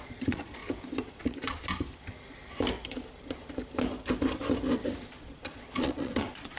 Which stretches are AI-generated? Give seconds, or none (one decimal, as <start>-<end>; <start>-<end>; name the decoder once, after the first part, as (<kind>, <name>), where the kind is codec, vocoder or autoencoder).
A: 0.0-0.6 (vocoder, Vocos); 1.1-1.6; 5.0-6.6